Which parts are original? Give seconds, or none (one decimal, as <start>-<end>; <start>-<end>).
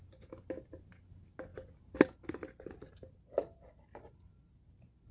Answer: 0.0-5.1